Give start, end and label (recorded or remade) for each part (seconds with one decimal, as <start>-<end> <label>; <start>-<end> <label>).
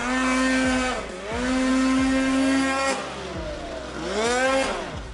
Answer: 0.0-5.1 recorded